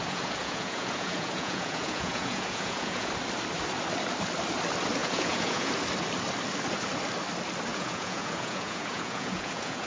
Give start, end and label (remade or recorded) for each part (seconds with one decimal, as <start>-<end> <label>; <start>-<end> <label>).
0.0-3.1 remade; 3.1-5.0 recorded; 5.0-5.7 remade; 5.7-7.7 recorded; 7.7-9.9 remade